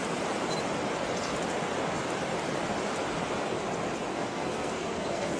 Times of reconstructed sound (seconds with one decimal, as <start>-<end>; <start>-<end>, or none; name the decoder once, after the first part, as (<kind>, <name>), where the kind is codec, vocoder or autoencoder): 4.1-5.4 (codec, SNAC)